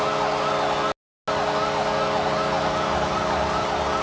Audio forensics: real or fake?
real